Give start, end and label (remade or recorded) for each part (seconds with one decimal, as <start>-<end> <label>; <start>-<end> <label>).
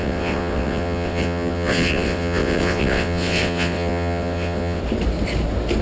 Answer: 0.0-4.8 remade; 4.8-5.8 recorded